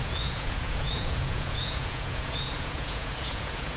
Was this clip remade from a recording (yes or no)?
yes